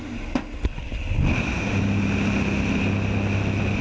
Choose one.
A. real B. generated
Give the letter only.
A